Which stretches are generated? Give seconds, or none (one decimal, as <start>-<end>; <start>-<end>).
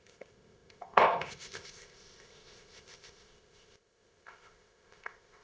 0.0-5.4